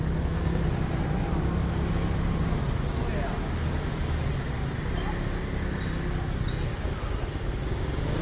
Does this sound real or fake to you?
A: real